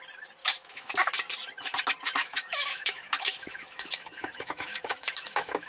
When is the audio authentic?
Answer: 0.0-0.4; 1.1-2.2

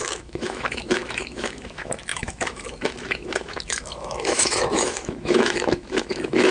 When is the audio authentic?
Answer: none

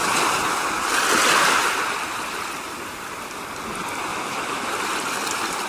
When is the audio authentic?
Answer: 0.0-4.1; 4.7-5.7